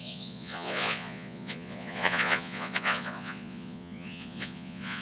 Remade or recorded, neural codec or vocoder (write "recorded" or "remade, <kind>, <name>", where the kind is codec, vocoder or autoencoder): remade, vocoder, Vocos